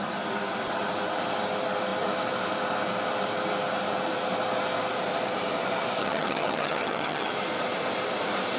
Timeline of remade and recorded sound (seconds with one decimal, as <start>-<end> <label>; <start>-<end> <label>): 0.0-6.0 recorded; 6.0-7.3 remade; 7.3-8.6 recorded